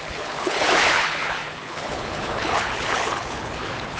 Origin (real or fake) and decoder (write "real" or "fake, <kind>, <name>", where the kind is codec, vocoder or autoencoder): fake, codec, HILCodec